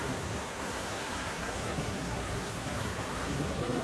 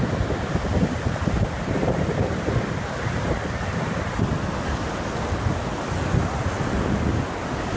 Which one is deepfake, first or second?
first